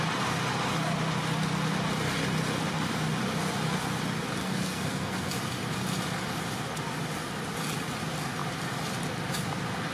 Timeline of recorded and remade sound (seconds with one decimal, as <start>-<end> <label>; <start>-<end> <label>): 0.0-4.4 recorded; 4.4-5.3 remade; 5.3-9.9 recorded